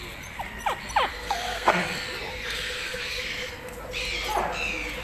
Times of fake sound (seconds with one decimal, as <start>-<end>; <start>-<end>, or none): 1.1-1.8; 2.3-3.5